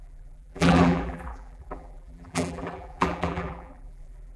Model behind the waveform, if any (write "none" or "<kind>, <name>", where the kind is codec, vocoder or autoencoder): vocoder, BigVGAN v2